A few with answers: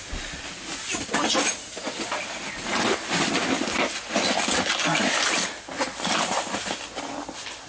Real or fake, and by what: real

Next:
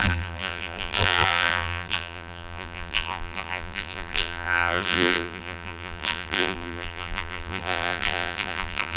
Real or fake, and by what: fake, vocoder, BigVGAN v2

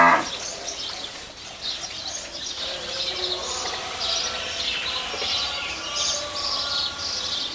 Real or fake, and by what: real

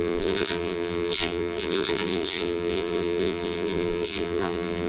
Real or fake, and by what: fake, vocoder, BigVGAN v2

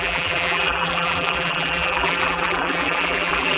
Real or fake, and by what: fake, vocoder, BigVGAN v2